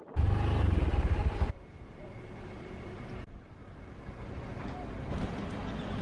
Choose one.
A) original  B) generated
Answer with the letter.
A